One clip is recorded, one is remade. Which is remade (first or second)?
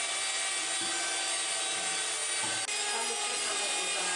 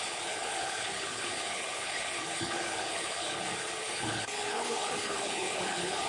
second